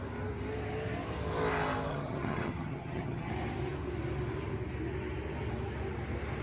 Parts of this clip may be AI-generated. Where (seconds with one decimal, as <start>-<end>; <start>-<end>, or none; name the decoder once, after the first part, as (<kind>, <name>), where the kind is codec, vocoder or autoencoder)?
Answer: 1.9-3.3 (vocoder, HiFi-GAN)